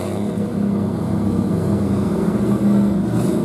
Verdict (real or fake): fake